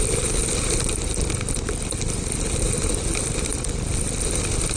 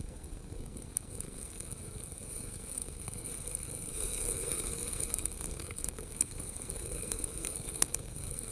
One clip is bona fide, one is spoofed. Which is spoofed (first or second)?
second